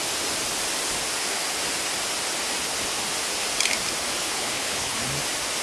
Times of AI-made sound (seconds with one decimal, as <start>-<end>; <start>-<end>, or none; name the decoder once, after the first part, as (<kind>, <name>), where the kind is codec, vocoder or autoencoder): 4.2-5.0 (codec, HILCodec)